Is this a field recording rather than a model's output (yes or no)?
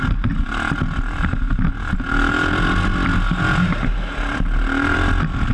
yes